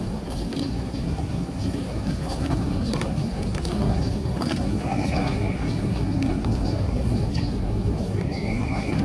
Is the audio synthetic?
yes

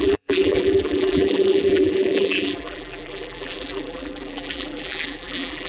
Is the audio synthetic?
yes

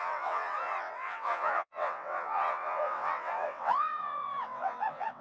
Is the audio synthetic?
yes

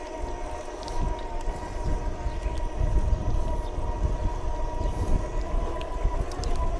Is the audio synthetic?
no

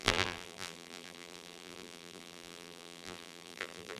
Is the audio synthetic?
yes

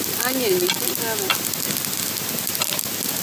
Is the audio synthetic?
no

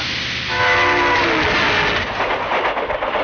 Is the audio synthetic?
no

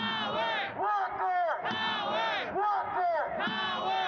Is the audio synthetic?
no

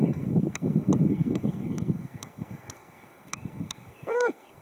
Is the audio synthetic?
yes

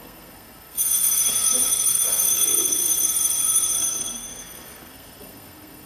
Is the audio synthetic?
yes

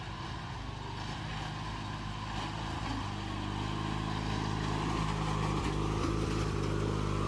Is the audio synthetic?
no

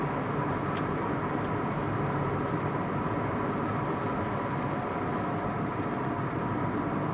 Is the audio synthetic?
no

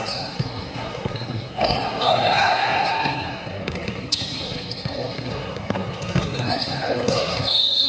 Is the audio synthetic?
yes